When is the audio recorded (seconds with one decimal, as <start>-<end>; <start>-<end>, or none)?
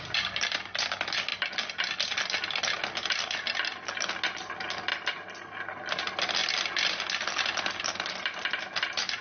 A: 0.0-9.2